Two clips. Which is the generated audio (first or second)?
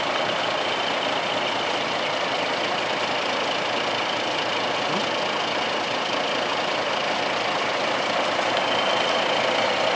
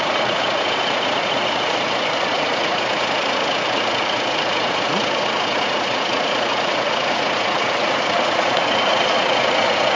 second